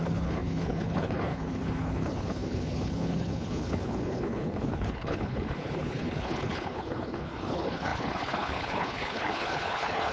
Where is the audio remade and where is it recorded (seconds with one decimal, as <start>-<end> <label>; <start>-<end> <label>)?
0.0-10.1 remade